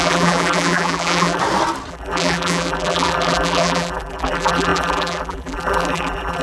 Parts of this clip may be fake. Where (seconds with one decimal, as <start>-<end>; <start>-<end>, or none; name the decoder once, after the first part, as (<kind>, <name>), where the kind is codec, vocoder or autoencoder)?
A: 0.0-1.4 (vocoder, BigVGAN v2); 1.9-6.4